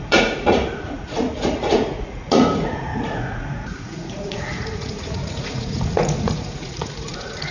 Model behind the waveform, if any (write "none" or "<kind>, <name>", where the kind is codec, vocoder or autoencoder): vocoder, Vocos